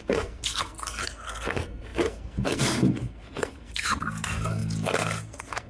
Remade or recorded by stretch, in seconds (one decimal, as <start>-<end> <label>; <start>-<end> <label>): 0.0-5.7 remade